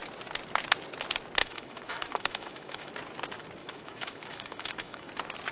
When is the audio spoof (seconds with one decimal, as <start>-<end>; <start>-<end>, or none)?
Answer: 1.4-2.9; 3.6-5.1